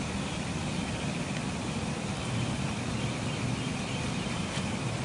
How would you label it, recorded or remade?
remade